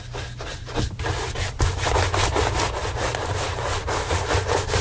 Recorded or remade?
recorded